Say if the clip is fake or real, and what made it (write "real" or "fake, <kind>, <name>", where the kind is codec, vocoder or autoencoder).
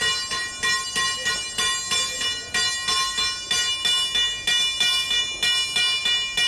real